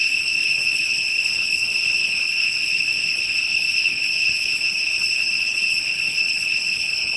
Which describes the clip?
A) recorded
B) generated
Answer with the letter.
B